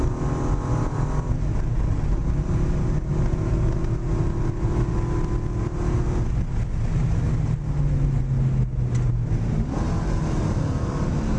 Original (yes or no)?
yes